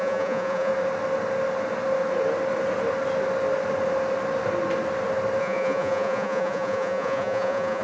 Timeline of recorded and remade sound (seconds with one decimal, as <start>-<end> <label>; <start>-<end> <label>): 0.0-0.7 remade; 0.7-5.4 recorded; 5.4-7.8 remade

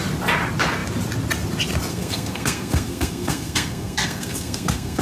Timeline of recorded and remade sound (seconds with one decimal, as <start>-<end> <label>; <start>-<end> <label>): 0.0-1.9 recorded; 1.9-5.0 remade

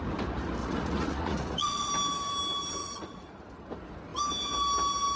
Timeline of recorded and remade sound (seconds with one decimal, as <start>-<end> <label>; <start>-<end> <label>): 0.0-0.6 recorded; 0.6-1.9 remade; 1.9-2.8 recorded; 2.8-3.4 remade; 3.4-5.2 recorded